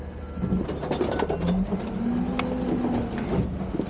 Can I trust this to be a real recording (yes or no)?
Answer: yes